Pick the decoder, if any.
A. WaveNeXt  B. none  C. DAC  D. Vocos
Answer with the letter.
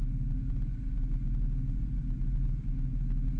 B